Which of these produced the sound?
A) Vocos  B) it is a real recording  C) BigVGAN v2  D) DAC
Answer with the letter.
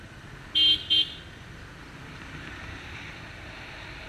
B